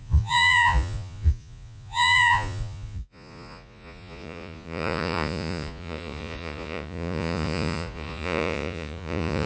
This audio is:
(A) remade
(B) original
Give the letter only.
A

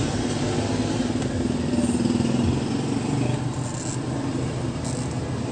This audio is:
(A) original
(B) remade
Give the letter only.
A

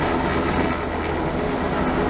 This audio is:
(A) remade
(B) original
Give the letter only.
B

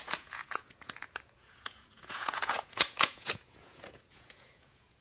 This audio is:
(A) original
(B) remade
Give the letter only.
B